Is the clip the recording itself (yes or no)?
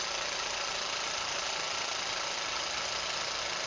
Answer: yes